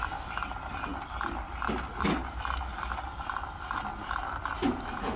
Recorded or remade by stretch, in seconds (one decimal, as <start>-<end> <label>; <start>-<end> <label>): 0.0-5.2 recorded